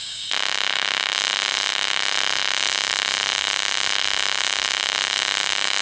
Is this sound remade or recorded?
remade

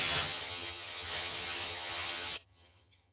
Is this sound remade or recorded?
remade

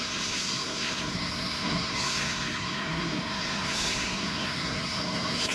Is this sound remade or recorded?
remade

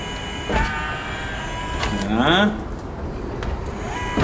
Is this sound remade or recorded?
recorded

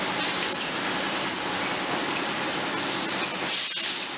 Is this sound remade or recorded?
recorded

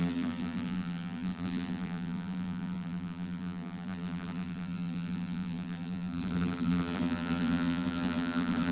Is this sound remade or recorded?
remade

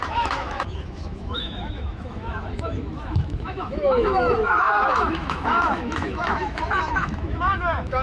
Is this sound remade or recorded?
remade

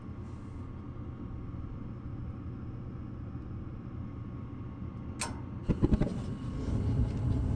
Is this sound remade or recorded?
recorded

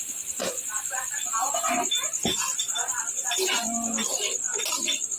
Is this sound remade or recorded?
recorded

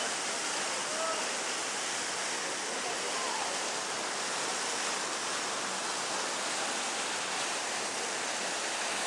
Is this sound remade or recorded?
recorded